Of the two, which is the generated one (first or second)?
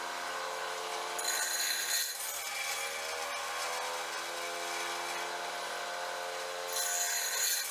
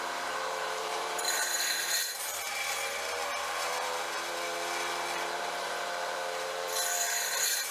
second